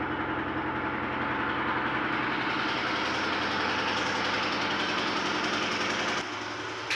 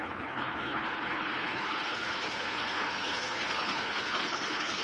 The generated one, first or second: second